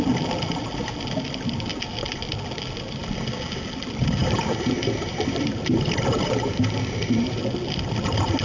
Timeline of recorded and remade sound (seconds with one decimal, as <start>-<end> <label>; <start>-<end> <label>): 0.0-4.2 recorded; 4.2-7.4 remade; 7.4-8.4 recorded